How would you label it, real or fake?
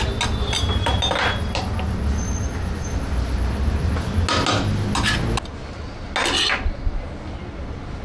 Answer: real